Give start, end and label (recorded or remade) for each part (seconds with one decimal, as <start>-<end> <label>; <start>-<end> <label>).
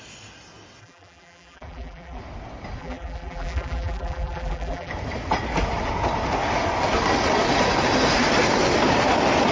0.0-0.8 recorded; 0.8-2.2 remade; 2.2-2.8 recorded; 2.8-4.9 remade; 4.9-9.5 recorded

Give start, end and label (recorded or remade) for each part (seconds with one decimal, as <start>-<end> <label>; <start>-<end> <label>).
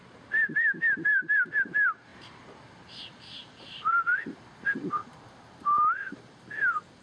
0.0-7.0 remade